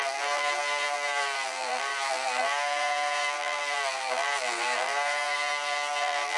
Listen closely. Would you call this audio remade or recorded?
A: remade